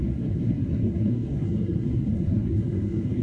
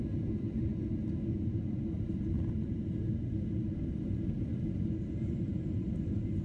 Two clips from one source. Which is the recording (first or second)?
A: second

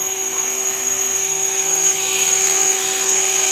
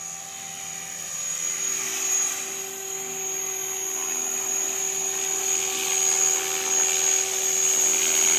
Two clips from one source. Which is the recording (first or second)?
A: second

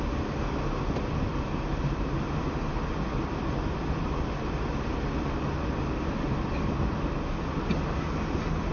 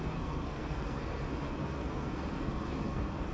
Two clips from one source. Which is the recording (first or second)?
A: first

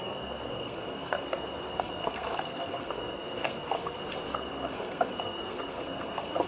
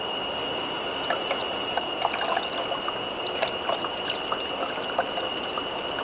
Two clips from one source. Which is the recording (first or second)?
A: second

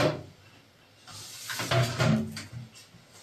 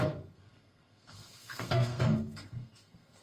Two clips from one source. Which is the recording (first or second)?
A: first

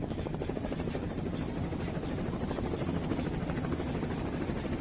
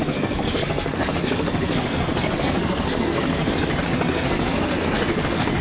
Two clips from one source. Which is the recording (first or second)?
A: first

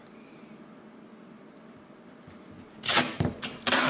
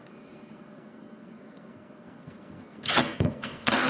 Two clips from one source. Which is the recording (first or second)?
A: first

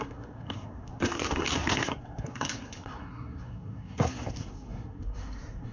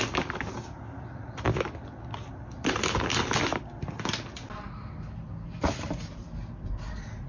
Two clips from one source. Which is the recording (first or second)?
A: second